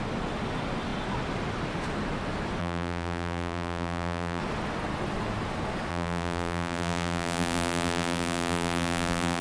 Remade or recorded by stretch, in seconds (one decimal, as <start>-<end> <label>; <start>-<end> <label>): 0.0-2.6 recorded; 2.6-4.4 remade; 4.4-5.9 recorded; 5.9-9.4 remade